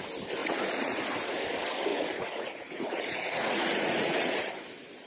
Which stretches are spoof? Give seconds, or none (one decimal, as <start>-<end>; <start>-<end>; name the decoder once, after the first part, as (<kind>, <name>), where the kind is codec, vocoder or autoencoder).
0.4-1.0 (vocoder, Vocos); 1.9-4.4